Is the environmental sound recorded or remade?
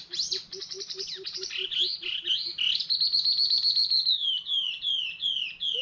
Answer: remade